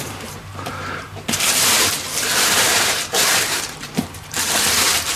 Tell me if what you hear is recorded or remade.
remade